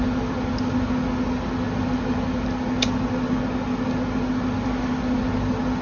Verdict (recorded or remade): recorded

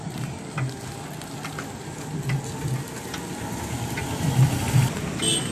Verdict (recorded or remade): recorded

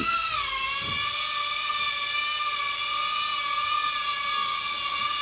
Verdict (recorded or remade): recorded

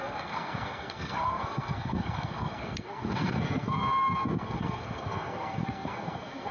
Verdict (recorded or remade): remade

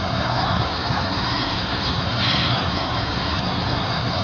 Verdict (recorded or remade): remade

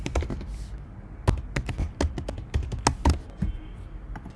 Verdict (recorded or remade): recorded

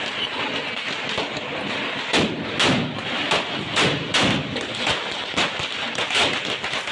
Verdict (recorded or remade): recorded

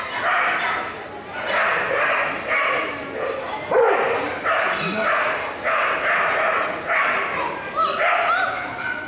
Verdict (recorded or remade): recorded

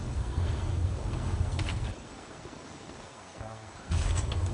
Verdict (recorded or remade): remade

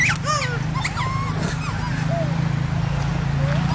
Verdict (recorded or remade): recorded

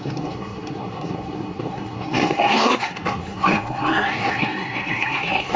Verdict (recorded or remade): remade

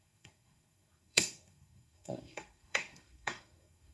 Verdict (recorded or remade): remade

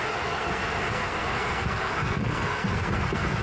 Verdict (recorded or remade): remade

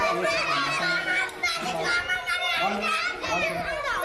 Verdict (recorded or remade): recorded